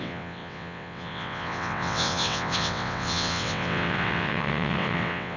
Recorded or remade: remade